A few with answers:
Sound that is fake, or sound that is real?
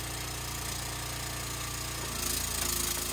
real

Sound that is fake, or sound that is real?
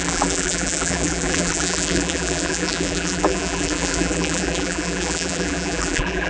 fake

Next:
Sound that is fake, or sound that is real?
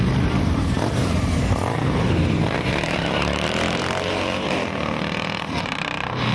fake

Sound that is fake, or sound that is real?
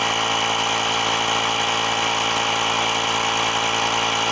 real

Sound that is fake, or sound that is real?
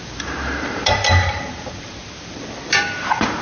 fake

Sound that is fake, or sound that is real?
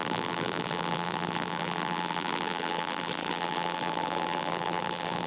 fake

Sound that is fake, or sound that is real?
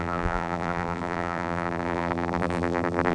fake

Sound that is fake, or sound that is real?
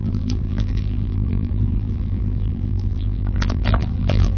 fake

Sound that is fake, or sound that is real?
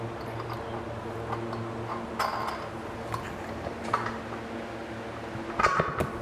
real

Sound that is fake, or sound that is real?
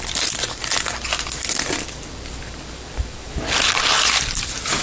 real